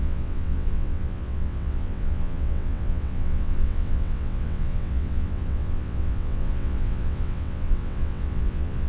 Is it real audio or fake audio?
fake